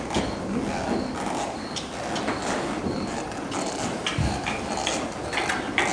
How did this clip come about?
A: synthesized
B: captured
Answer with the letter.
B